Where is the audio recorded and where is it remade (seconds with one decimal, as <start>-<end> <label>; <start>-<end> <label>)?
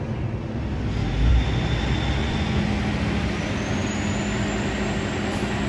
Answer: 0.0-2.2 recorded; 2.2-2.7 remade; 2.7-5.7 recorded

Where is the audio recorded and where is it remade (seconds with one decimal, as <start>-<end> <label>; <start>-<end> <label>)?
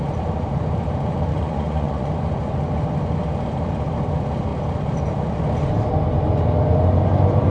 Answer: 0.0-1.3 recorded; 1.3-2.1 remade; 2.1-7.5 recorded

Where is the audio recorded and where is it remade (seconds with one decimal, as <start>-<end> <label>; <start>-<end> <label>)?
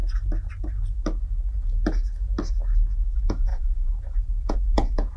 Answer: 0.0-3.1 recorded; 3.1-5.2 remade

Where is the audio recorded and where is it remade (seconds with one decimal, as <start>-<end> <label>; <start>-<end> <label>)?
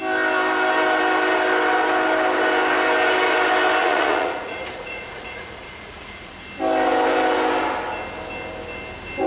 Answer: 0.0-3.8 recorded; 3.8-6.3 remade; 6.3-9.3 recorded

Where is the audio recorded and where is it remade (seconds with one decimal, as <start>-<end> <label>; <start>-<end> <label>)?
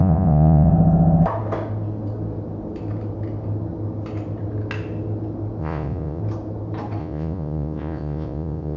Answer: 0.0-0.7 remade; 0.7-5.6 recorded; 5.6-6.2 remade; 6.2-7.0 recorded; 7.0-8.8 remade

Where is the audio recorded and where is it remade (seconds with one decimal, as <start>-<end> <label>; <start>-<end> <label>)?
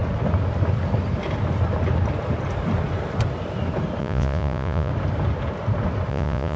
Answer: 0.0-4.0 recorded; 4.0-4.9 remade; 4.9-6.1 recorded; 6.1-6.6 remade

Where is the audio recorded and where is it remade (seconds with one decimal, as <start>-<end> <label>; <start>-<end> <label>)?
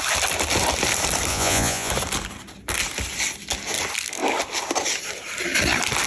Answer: 0.0-1.3 recorded; 1.3-1.9 remade; 1.9-6.1 recorded